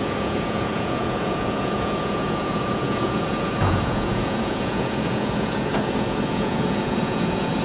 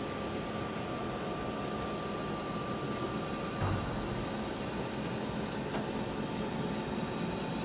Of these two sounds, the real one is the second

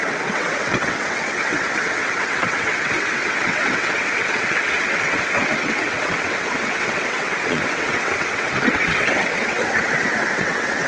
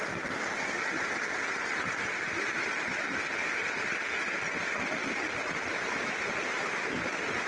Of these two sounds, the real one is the second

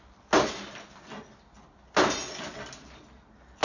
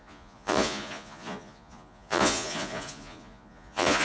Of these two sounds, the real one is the first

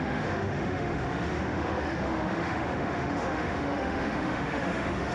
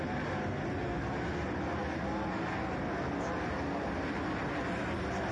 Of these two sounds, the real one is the second